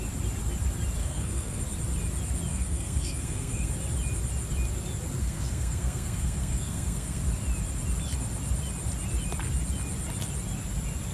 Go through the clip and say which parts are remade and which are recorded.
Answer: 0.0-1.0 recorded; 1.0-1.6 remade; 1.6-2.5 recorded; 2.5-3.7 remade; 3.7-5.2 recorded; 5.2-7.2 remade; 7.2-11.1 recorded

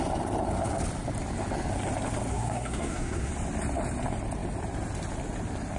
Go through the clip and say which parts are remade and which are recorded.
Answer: 0.0-2.3 recorded; 2.3-3.3 remade; 3.3-5.8 recorded

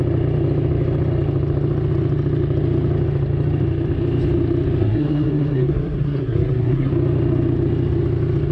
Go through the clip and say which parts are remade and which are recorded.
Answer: 0.0-4.8 recorded; 4.8-6.9 remade; 6.9-8.5 recorded

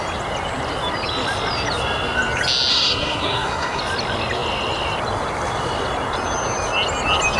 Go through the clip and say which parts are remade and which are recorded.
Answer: 0.0-2.7 recorded; 2.7-3.8 remade; 3.8-7.4 recorded

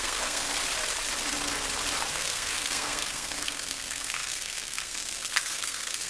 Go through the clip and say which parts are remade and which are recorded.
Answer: 0.0-0.5 remade; 0.5-2.1 recorded; 2.1-6.1 remade

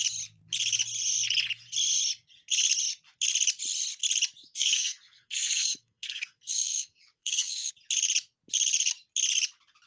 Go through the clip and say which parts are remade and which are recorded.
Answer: 0.0-4.4 recorded; 4.4-7.7 remade; 7.7-9.9 recorded